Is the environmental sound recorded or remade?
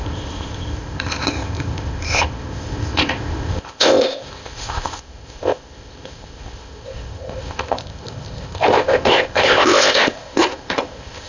remade